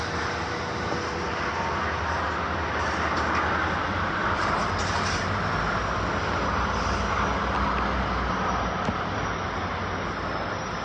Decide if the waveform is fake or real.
real